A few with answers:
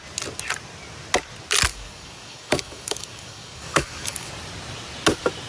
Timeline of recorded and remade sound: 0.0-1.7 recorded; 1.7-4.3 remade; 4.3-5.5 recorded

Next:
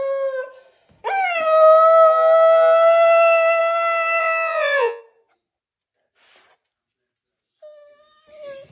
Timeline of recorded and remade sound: 0.0-4.2 recorded; 4.2-5.0 remade; 5.0-8.7 recorded

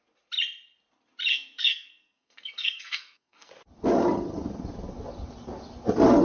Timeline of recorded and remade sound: 0.0-1.3 recorded; 1.3-3.5 remade; 3.5-6.2 recorded

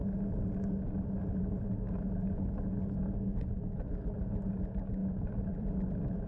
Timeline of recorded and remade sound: 0.0-5.0 recorded; 5.0-6.3 remade

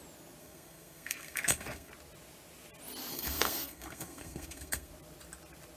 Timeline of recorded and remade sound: 0.0-0.4 recorded; 0.4-1.9 remade; 1.9-3.1 recorded; 3.1-4.9 remade; 4.9-5.8 recorded